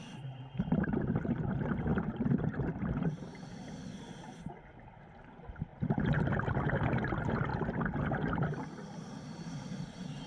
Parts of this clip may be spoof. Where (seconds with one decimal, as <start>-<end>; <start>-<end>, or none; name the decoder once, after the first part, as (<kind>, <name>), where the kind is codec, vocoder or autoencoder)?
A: 0.0-10.3 (vocoder, BigVGAN v2)